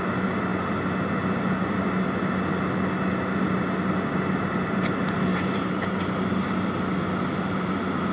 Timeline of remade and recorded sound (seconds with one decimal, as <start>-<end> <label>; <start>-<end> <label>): 0.0-5.3 recorded; 5.3-5.9 remade; 5.9-8.1 recorded

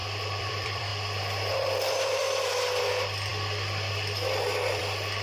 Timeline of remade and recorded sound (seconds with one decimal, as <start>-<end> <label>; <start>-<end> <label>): 0.0-0.9 remade; 0.9-1.5 recorded; 1.5-2.2 remade; 2.2-2.8 recorded; 2.8-5.2 remade

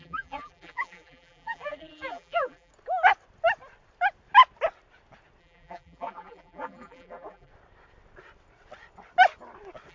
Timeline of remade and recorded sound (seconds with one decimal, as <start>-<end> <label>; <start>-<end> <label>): 0.0-2.7 remade; 2.7-5.4 recorded; 5.4-7.5 remade; 7.5-9.9 recorded

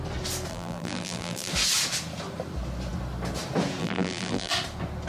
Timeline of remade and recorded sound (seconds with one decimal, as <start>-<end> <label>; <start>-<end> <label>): 0.0-0.5 recorded; 0.5-1.5 remade; 1.5-3.8 recorded; 3.8-4.5 remade; 4.5-5.1 recorded

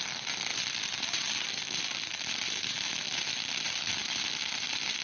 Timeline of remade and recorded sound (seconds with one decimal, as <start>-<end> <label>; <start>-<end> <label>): 0.0-5.0 remade

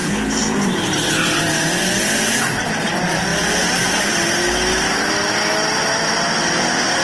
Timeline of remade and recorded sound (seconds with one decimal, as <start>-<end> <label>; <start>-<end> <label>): 0.0-1.4 remade; 1.4-7.0 recorded

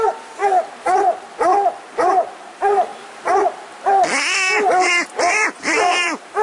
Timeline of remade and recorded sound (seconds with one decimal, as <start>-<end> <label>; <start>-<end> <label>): 0.0-0.4 remade; 0.4-1.8 recorded; 1.8-2.9 remade; 2.9-5.3 recorded; 5.3-6.4 remade